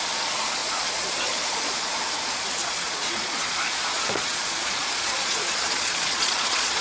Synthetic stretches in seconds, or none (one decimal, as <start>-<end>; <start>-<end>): 0.6-2.0; 2.6-6.8